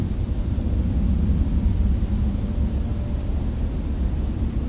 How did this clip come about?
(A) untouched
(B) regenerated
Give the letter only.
A